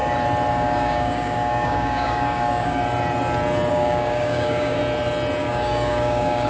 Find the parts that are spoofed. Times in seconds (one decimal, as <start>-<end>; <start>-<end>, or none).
0.5-2.8; 3.7-4.8; 5.4-6.5